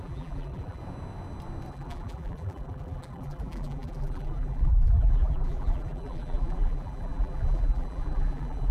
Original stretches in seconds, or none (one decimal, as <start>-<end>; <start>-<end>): 0.8-1.7